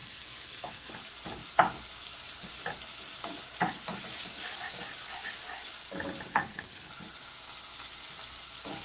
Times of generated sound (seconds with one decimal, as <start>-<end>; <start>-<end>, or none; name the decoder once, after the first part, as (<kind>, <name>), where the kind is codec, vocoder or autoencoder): 0.0-0.9 (codec, SNAC); 6.3-6.9